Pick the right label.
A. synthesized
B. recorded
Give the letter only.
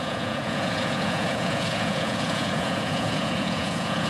A